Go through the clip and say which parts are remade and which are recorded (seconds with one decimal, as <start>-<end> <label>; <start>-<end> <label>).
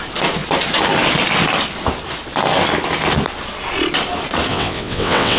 0.0-4.5 recorded; 4.5-5.4 remade